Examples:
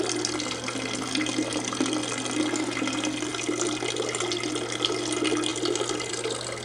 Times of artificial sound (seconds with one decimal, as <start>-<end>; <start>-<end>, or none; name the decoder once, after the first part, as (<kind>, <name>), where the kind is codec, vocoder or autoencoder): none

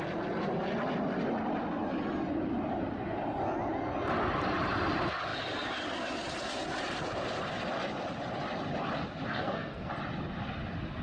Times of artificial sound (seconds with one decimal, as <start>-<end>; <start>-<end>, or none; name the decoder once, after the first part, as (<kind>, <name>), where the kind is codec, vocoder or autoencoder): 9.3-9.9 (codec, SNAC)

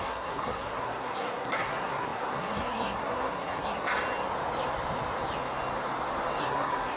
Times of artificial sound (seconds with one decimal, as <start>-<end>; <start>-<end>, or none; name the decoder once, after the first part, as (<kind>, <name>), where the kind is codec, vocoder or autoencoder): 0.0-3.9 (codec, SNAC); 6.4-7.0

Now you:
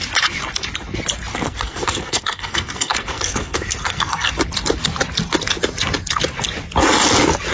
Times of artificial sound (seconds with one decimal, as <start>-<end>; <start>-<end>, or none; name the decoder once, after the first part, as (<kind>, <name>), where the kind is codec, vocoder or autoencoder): 1.3-4.3 (codec, SNAC)

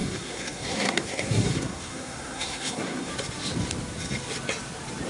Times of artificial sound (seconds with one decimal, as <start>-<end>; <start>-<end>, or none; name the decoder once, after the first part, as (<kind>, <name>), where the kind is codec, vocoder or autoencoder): 0.0-3.1 (codec, SNAC)

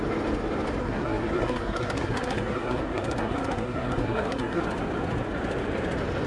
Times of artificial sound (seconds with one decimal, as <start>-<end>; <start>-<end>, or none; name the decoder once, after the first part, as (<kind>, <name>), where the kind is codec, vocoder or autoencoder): 0.8-4.6 (codec, SNAC)